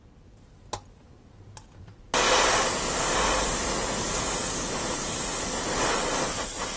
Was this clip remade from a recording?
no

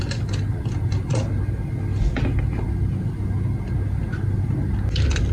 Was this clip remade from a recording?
no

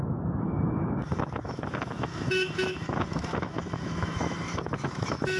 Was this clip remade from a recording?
yes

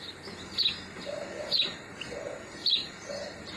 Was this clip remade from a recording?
no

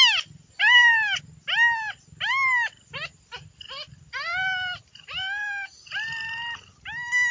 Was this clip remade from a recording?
no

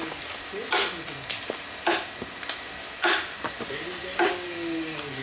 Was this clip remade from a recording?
no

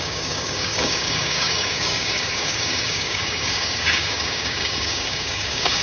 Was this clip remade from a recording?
yes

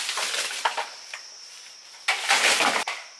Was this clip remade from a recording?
no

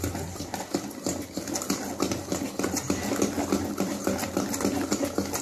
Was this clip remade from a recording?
no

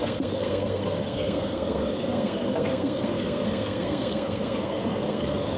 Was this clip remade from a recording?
yes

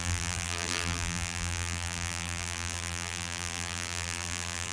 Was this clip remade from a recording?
yes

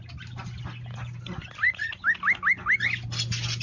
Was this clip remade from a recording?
no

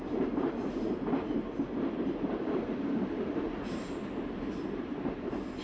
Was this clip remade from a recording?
yes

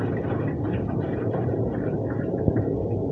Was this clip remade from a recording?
yes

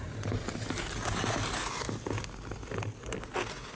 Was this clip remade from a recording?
no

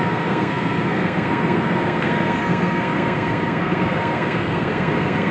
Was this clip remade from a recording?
yes